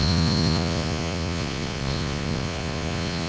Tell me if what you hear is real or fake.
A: fake